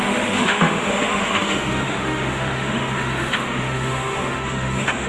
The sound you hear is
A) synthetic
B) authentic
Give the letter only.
A